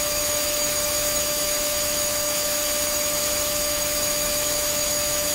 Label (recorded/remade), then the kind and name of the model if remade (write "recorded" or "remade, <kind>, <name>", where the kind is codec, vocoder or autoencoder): remade, autoencoder, DAC-VAE